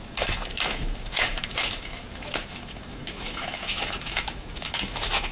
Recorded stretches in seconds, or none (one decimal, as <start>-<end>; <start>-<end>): none